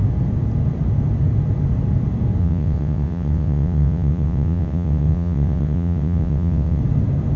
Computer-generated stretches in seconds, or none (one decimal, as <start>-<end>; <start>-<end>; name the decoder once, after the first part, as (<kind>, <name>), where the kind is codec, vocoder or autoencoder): 2.4-6.8 (vocoder, WaveNeXt)